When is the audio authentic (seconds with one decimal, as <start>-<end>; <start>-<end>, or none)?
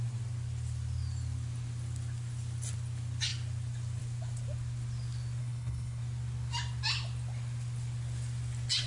0.0-5.4; 6.0-8.9